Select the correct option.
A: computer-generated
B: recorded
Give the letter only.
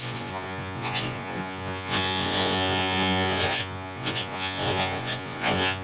A